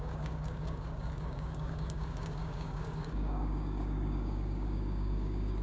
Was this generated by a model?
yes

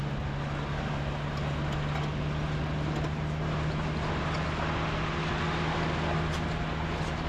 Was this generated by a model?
no